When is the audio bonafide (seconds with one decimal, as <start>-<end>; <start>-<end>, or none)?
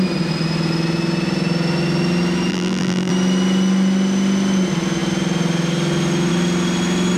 0.0-2.5; 3.1-7.2